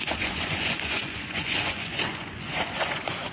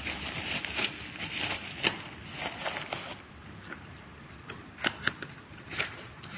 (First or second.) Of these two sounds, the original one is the second